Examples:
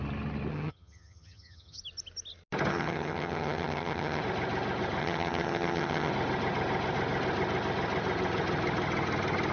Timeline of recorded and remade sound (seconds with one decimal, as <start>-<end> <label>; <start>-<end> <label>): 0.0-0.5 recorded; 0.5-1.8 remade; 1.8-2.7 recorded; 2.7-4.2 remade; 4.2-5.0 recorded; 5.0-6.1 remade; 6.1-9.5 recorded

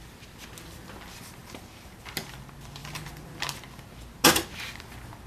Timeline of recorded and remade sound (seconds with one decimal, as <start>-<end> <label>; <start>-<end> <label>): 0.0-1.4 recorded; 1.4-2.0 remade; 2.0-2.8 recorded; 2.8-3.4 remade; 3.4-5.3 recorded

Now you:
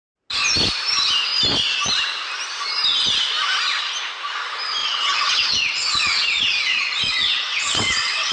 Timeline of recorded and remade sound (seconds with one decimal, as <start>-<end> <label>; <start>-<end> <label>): 0.0-4.8 recorded; 4.8-8.3 remade

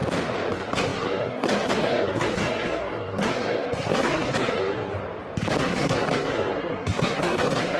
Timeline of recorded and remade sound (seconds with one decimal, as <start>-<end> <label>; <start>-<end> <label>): 0.0-0.5 recorded; 0.5-4.9 remade; 4.9-5.6 recorded; 5.6-7.8 remade

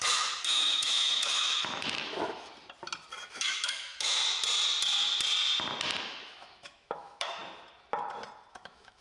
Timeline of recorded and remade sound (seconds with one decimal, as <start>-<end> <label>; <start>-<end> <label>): 0.0-2.5 remade; 2.5-3.3 recorded; 3.3-4.2 remade; 4.2-6.0 recorded; 6.0-7.4 remade; 7.4-8.5 recorded; 8.5-9.0 remade

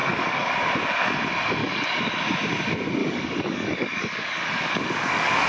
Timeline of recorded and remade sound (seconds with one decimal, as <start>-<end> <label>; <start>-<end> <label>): 0.0-0.6 remade; 0.6-1.6 recorded; 1.6-2.2 remade; 2.2-3.0 recorded; 3.0-5.5 remade

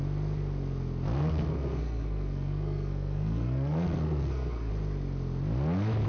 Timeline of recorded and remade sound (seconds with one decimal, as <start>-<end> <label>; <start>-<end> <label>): 0.0-1.2 recorded; 1.2-4.7 remade; 4.7-6.1 recorded

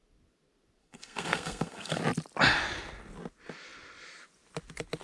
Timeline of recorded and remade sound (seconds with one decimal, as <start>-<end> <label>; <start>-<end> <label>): 0.0-0.8 recorded; 0.8-2.0 remade; 2.0-5.0 recorded